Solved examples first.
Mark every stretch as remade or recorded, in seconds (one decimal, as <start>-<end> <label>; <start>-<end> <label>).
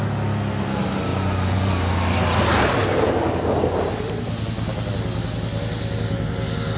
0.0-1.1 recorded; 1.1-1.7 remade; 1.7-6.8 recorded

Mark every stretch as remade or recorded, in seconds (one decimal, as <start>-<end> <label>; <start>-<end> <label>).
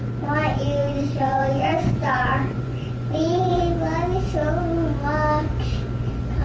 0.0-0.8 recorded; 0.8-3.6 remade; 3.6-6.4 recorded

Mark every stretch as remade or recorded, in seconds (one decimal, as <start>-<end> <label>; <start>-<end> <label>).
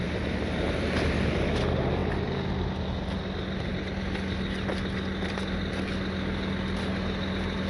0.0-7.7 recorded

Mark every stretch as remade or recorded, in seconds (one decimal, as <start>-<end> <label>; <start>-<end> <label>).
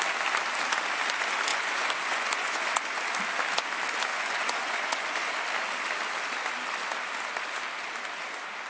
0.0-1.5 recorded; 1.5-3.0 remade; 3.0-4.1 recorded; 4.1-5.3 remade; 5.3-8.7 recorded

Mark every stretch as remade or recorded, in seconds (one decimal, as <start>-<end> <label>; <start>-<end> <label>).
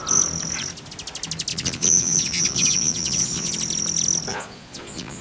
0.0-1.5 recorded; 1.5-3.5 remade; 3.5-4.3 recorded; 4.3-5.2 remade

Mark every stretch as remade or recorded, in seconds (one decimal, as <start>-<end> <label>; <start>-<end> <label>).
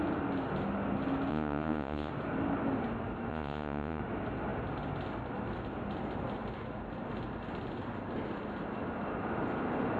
0.0-1.3 recorded; 1.3-2.1 remade; 2.1-3.3 recorded; 3.3-4.0 remade; 4.0-10.0 recorded